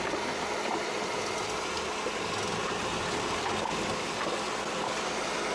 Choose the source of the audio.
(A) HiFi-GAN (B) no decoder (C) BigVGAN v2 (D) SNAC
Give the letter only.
B